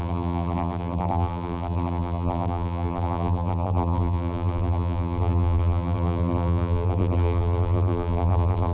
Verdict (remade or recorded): remade